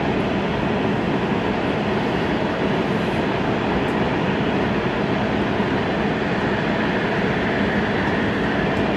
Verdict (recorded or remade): recorded